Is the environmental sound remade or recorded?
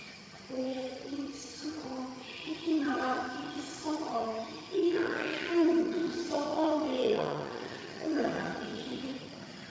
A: remade